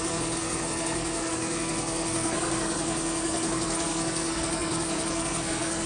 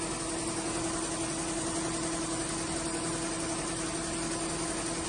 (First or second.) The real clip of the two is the second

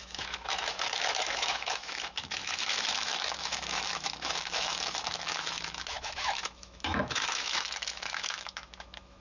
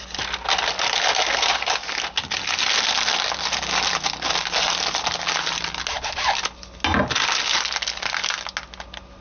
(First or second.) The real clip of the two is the second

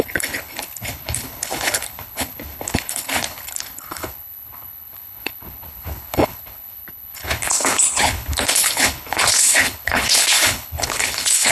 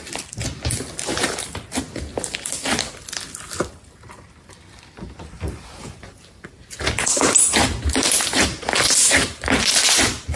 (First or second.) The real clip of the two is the second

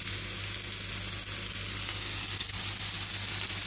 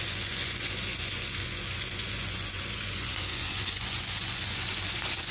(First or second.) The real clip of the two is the first